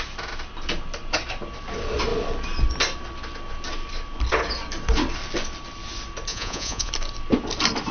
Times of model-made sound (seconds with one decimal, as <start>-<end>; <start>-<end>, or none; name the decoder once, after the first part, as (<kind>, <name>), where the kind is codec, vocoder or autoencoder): 6.3-6.9 (vocoder, Vocos)